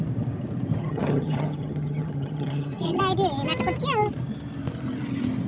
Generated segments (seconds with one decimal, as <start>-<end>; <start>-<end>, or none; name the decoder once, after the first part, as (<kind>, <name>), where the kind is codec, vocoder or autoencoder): 0.8-3.0 (vocoder, HiFi-GAN)